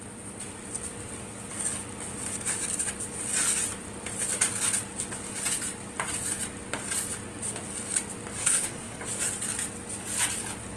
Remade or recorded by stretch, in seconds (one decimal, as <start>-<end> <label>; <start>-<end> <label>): 0.0-8.4 recorded; 8.4-9.0 remade; 9.0-10.8 recorded